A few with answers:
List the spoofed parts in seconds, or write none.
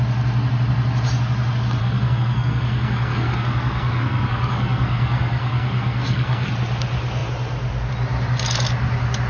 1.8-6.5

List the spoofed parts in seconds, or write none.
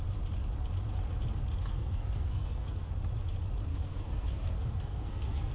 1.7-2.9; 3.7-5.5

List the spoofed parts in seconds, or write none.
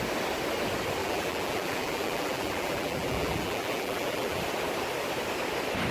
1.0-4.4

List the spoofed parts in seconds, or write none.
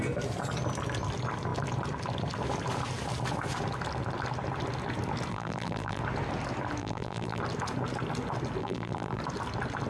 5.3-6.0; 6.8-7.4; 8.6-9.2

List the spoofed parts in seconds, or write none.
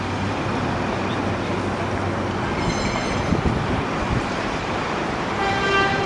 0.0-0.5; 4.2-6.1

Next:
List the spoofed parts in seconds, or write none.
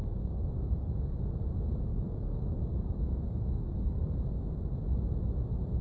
0.0-1.2; 1.9-4.4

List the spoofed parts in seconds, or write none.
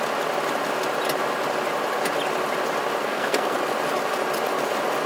3.0-3.6